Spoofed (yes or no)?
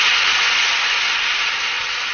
no